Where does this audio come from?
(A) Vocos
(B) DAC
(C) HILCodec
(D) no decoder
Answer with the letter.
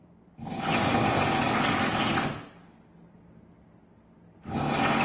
D